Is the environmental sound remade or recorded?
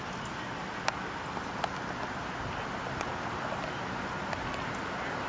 recorded